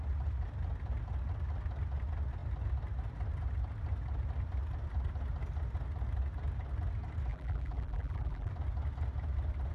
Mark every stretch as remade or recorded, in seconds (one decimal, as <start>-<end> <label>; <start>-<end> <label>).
0.0-7.3 recorded; 7.3-8.5 remade; 8.5-9.7 recorded